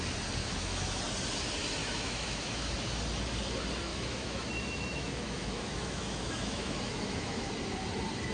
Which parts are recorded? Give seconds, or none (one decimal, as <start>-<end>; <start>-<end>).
0.0-0.4; 1.0-1.8; 2.7-3.9; 7.5-8.3